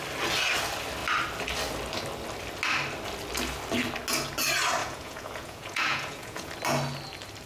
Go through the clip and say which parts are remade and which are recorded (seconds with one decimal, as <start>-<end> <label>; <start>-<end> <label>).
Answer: 0.0-4.8 recorded; 4.8-6.5 remade; 6.5-7.5 recorded